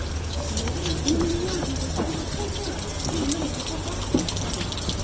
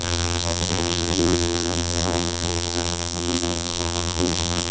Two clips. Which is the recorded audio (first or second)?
first